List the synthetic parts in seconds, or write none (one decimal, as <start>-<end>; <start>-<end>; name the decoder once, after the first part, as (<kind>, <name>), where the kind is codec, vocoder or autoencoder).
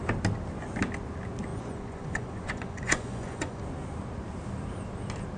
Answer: 1.5-3.6 (vocoder, Vocos)